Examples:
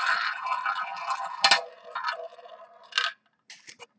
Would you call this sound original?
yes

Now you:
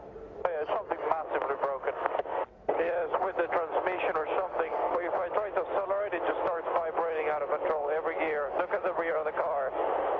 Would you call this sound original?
yes